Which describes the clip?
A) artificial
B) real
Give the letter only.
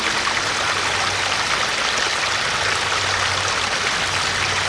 B